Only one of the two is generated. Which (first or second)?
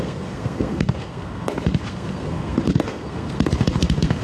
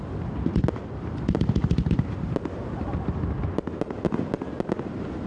first